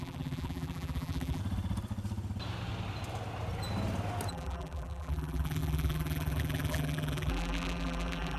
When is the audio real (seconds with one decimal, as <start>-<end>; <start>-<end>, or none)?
1.4-4.3